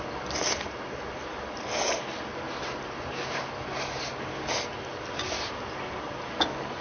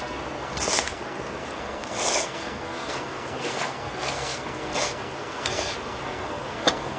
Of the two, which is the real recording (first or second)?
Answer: first